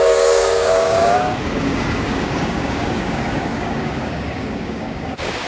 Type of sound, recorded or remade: remade